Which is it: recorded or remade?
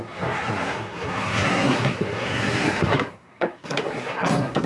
remade